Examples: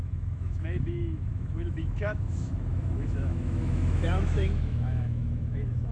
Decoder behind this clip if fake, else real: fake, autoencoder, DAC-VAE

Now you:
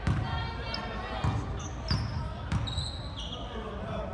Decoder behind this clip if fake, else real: real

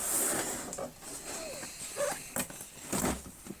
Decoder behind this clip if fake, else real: real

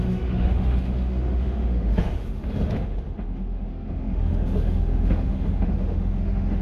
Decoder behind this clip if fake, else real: fake, autoencoder, DAC-VAE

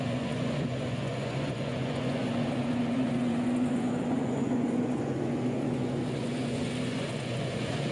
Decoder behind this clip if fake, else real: fake, vocoder, Vocos